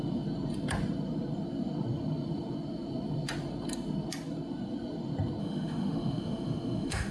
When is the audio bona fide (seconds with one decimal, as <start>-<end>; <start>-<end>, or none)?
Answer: 0.0-5.4